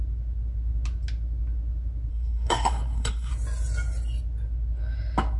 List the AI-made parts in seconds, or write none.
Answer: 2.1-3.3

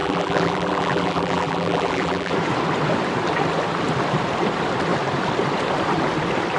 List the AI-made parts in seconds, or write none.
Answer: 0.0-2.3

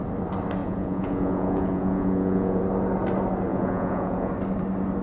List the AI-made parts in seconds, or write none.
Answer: 0.6-2.6; 3.5-4.3

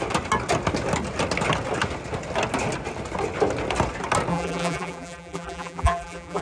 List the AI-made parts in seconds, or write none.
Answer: 4.3-6.4

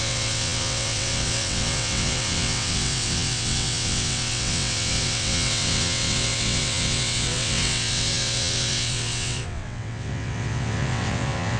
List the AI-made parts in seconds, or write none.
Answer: 0.0-11.6

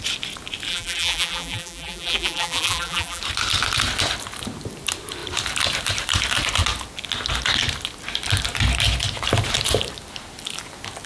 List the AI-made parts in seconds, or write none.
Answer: 0.7-3.2

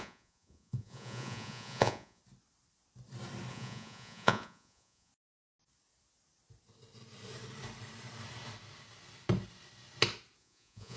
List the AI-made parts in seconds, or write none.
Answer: 0.0-2.2; 3.5-5.1; 10.4-11.0